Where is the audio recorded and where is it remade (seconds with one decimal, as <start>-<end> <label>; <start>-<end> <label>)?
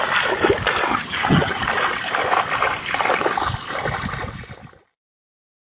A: 0.0-0.9 recorded; 0.9-1.6 remade; 1.6-5.7 recorded